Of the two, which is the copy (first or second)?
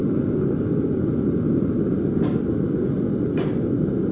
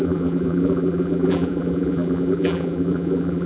second